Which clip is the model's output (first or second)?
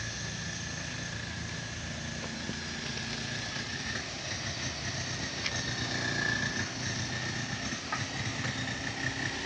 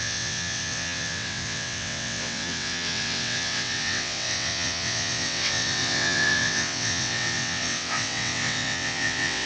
second